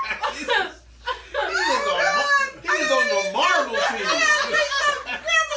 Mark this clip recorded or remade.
recorded